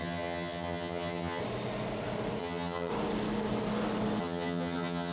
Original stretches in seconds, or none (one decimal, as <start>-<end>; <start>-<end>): 1.4-2.4; 2.9-4.2